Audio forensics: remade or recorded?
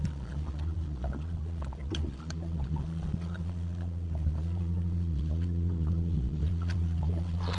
remade